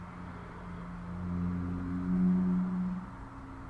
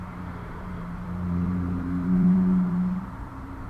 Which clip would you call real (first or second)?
first